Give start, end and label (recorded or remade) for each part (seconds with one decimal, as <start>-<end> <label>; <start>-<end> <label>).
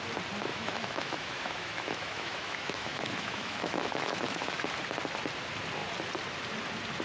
0.0-0.5 recorded; 0.5-4.7 remade; 4.7-7.0 recorded